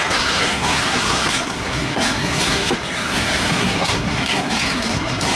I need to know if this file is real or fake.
fake